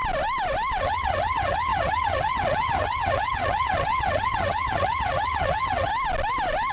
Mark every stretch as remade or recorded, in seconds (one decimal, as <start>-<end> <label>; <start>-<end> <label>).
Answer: 0.0-0.8 recorded; 0.8-5.9 remade; 5.9-6.7 recorded